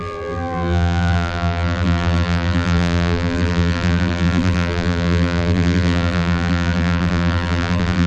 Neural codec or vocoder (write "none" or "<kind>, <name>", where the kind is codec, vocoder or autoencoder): vocoder, BigVGAN v2